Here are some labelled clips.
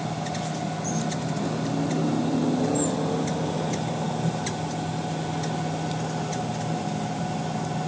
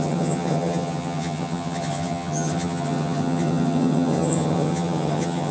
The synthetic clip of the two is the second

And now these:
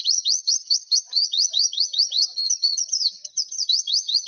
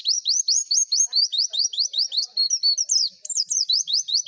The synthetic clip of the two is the first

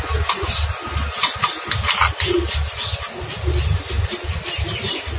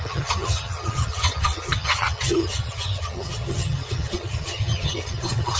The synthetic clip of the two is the second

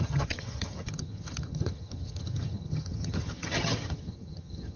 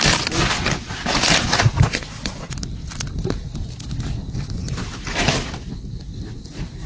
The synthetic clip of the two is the first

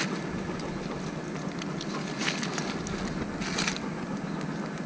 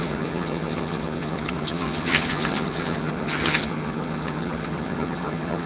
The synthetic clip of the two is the second